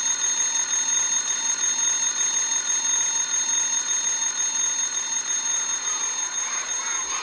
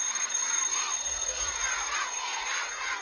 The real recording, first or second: first